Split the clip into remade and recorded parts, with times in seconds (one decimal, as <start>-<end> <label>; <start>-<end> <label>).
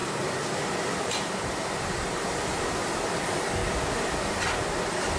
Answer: 0.0-3.1 remade; 3.1-5.2 recorded